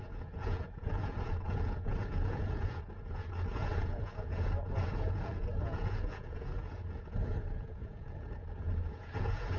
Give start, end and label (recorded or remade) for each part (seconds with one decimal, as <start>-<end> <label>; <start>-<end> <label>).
0.0-9.6 remade